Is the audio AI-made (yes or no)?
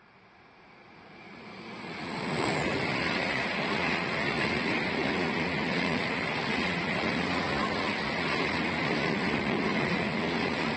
yes